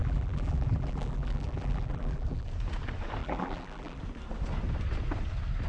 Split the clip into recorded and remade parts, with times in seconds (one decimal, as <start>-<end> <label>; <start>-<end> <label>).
0.0-2.5 remade; 2.5-3.2 recorded; 3.2-4.0 remade; 4.0-5.7 recorded